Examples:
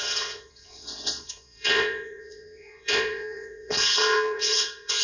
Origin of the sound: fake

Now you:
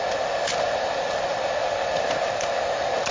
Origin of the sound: real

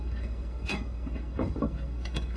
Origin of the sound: fake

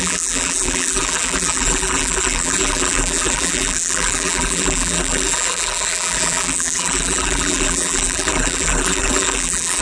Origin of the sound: fake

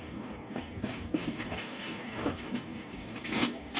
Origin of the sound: fake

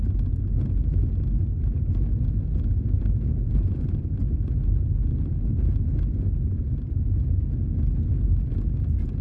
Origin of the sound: real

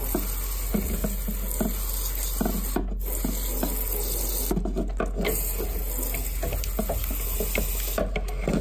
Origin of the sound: real